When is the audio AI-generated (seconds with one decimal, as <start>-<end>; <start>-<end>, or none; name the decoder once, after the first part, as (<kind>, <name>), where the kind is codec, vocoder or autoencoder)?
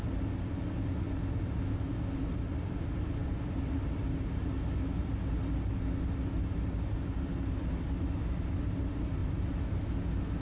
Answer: 9.2-9.8 (vocoder, BigVGAN v2)